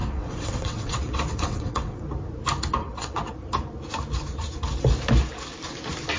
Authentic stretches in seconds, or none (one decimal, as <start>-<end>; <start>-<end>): 2.0-2.8; 3.3-6.2